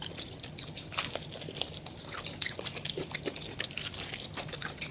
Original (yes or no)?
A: yes